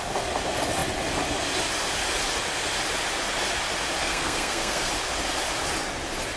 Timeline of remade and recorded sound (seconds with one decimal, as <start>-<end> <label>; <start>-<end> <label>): 0.0-4.0 recorded; 4.0-4.9 remade; 4.9-6.4 recorded